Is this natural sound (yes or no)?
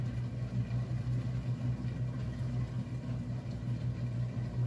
yes